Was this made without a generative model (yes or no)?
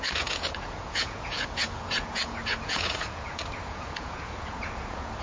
no